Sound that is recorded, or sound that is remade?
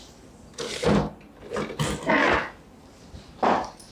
recorded